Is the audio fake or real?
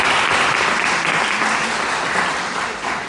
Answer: real